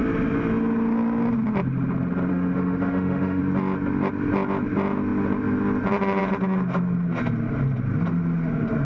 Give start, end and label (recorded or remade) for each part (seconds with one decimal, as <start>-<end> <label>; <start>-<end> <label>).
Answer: 0.0-2.3 recorded; 2.3-3.4 remade; 3.4-8.8 recorded